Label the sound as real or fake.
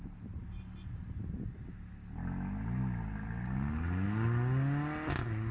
real